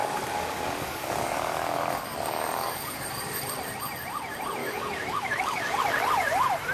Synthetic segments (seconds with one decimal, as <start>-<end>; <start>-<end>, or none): 0.0-3.0; 4.6-5.8